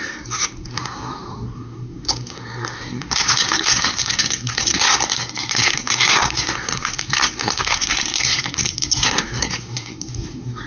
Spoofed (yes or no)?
yes